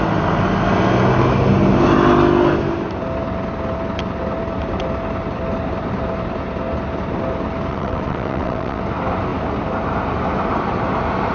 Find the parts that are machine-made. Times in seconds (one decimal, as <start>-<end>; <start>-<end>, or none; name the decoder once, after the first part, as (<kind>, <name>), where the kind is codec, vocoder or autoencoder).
7.7-8.8 (vocoder, WaveNeXt)